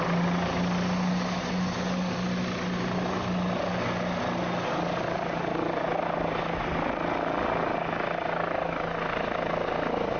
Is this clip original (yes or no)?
yes